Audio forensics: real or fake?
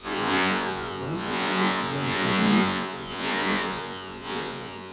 fake